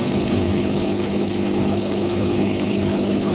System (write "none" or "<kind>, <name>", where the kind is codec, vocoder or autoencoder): codec, HILCodec